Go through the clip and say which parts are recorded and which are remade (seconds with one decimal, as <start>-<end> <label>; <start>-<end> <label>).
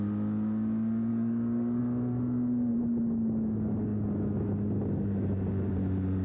0.0-1.1 recorded; 1.1-1.8 remade; 1.8-6.2 recorded